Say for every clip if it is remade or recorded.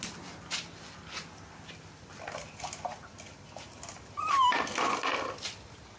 recorded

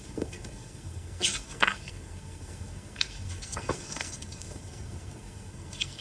remade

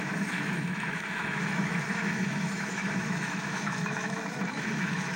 remade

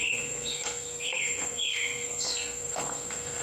remade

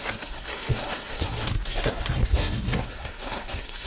remade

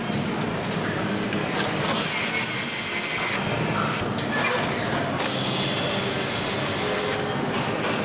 recorded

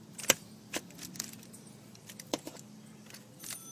remade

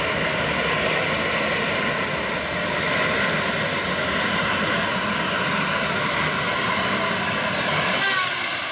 recorded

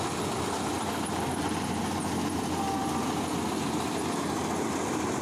recorded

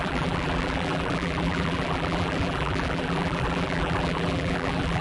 remade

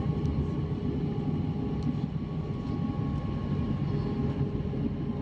recorded